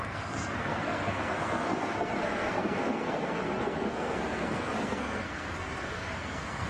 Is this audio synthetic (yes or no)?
yes